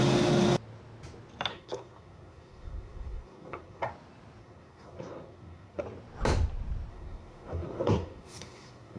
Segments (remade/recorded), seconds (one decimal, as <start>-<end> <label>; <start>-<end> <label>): 0.0-1.5 recorded; 1.5-3.9 remade; 3.9-4.4 recorded; 4.4-5.8 remade; 5.8-6.9 recorded; 6.9-9.0 remade